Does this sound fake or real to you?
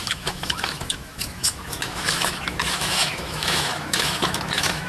fake